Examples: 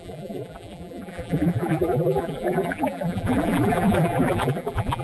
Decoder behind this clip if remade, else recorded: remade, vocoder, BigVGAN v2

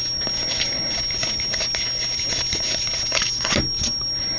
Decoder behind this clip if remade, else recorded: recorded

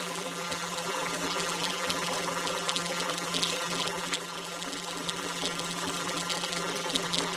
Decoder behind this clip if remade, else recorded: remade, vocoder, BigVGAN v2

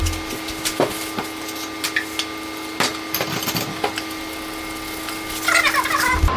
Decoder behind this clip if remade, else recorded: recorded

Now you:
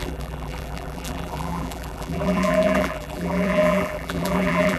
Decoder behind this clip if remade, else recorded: remade, vocoder, BigVGAN v2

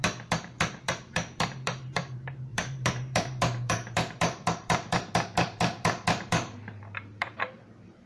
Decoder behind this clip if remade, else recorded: remade, vocoder, BigVGAN v2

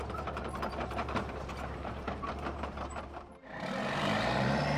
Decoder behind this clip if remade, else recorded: remade, vocoder, BigVGAN v2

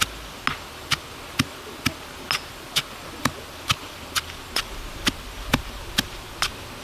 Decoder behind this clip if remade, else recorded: recorded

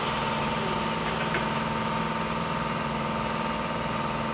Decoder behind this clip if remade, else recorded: recorded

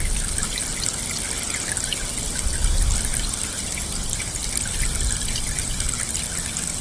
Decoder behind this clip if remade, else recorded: recorded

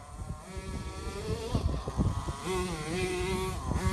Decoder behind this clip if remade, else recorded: recorded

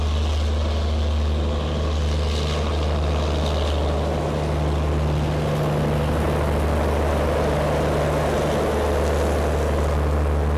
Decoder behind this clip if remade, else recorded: recorded